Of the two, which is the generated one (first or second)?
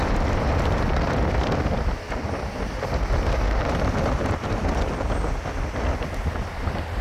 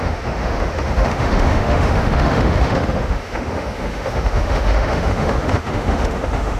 second